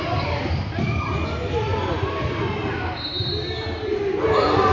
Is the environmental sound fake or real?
real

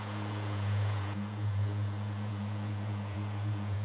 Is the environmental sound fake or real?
fake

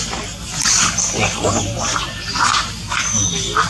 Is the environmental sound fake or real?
real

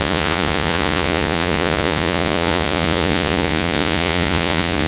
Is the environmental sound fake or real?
fake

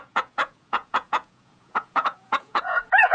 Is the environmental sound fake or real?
fake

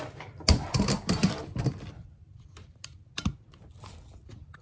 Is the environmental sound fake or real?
real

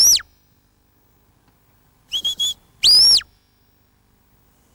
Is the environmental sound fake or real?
real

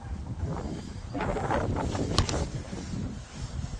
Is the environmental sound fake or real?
real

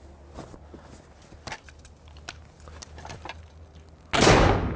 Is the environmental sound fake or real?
real